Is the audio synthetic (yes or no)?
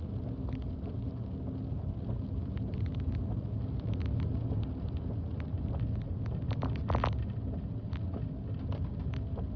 no